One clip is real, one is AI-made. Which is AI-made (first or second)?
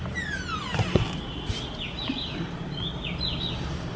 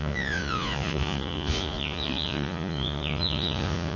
second